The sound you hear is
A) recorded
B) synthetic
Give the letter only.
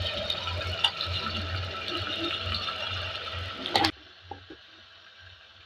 A